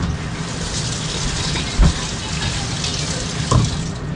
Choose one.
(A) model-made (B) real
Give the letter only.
B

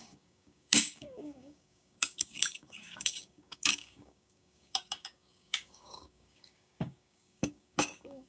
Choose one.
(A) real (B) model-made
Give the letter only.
B